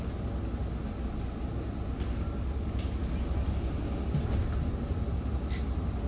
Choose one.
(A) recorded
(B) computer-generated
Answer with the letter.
A